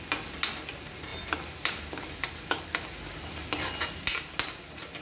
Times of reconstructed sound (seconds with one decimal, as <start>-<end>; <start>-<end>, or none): none